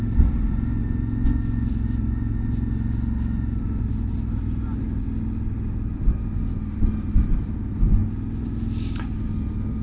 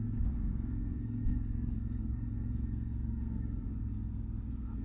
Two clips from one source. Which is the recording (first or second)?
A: first